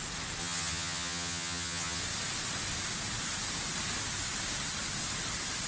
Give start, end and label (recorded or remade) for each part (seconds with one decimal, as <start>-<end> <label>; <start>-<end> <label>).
0.0-0.4 recorded; 0.4-2.0 remade; 2.0-5.7 recorded